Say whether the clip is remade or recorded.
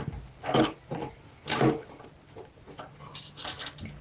recorded